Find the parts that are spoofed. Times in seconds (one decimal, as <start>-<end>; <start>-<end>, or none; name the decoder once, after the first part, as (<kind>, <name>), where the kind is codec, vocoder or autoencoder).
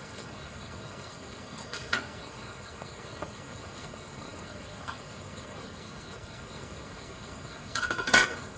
0.0-8.6 (codec, SNAC)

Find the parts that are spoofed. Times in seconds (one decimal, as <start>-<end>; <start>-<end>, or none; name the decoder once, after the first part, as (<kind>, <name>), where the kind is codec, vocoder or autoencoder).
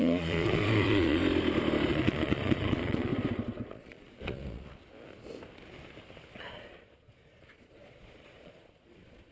0.0-1.2 (vocoder, Vocos); 1.9-3.1; 3.7-4.8; 6.3-9.3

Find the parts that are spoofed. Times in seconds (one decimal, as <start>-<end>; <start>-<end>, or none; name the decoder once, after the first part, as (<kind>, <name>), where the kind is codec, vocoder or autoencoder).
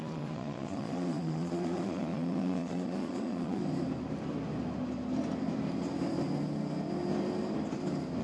0.0-3.6 (vocoder, Vocos)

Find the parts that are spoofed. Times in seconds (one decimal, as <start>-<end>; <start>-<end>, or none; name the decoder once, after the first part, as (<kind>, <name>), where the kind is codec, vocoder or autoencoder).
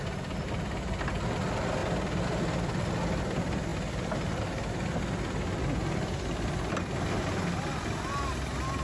none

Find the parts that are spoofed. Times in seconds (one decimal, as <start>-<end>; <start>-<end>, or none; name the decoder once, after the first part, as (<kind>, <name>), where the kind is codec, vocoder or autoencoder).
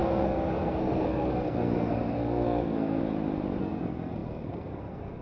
0.0-3.0 (codec, SNAC); 3.6-5.2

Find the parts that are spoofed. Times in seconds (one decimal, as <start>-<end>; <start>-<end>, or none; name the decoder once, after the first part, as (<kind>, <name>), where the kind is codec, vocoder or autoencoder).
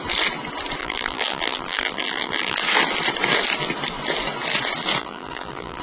0.8-2.6 (vocoder, BigVGAN v2); 5.0-5.8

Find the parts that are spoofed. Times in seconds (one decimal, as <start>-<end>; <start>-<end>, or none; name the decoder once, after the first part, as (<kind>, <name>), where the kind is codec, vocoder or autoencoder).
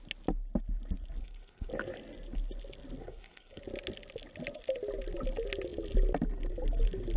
1.2-1.7 (codec, SNAC); 3.0-3.6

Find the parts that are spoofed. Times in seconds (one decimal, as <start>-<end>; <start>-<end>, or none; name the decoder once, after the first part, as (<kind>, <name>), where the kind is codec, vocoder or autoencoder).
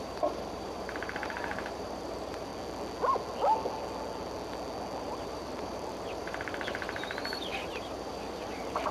0.0-2.5 (vocoder, BigVGAN v2); 5.0-8.9